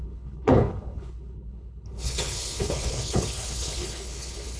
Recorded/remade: remade